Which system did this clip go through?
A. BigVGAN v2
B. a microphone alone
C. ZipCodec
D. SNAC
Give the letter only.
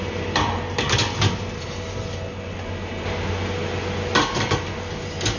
B